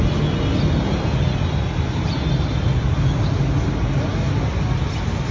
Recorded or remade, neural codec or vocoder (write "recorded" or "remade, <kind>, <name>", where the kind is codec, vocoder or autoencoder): recorded